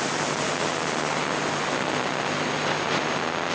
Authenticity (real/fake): real